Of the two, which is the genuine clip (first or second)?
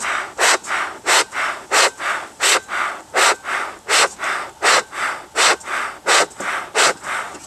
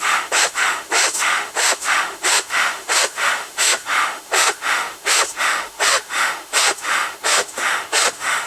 first